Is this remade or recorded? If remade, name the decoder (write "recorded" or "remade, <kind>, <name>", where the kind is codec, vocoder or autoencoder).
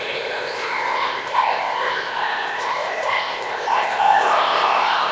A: remade, codec, ZipCodec